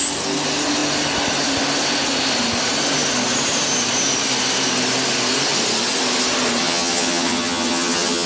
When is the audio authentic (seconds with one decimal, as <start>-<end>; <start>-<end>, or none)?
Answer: 0.0-6.6